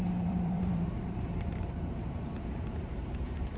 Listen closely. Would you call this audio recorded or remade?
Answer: remade